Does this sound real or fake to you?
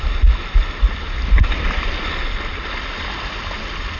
real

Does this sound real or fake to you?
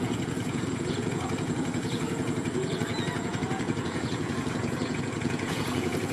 fake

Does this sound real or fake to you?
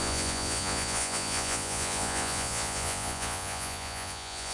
fake